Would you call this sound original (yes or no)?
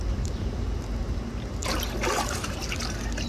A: yes